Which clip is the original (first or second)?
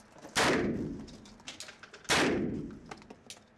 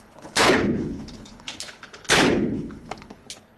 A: first